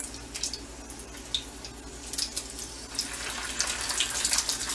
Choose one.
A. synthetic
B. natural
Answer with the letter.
B